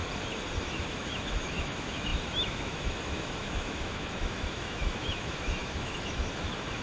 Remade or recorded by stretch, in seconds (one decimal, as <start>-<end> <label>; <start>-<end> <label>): 0.0-0.6 recorded; 0.6-6.8 remade